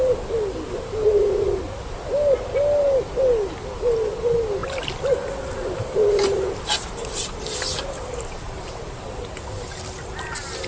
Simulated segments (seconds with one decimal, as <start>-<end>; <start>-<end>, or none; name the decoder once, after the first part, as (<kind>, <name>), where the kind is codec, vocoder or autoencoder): none